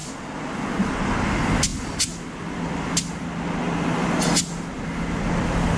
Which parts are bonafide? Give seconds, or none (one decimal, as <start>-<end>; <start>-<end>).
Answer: 0.0-5.8